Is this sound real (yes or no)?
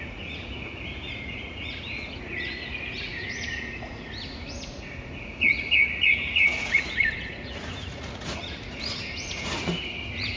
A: no